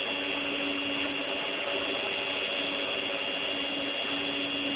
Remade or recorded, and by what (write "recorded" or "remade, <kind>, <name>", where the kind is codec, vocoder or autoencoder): recorded